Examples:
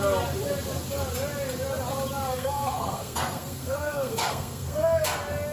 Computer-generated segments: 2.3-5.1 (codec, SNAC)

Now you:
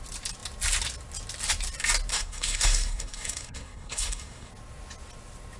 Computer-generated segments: 2.1-4.5 (codec, SNAC)

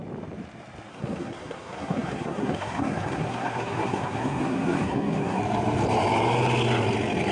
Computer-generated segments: 0.9-5.4 (codec, SNAC)